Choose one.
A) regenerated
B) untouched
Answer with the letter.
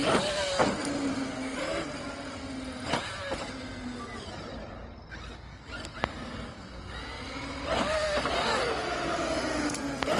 B